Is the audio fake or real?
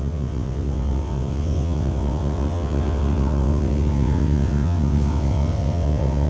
fake